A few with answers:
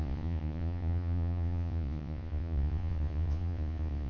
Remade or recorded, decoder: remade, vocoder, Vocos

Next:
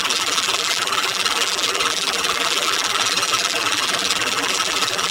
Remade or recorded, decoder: remade, vocoder, BigVGAN v2